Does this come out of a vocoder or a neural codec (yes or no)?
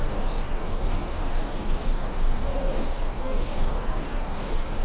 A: yes